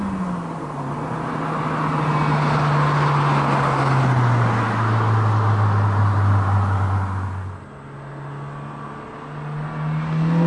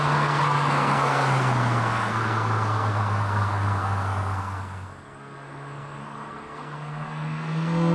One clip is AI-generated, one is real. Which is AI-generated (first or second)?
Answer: second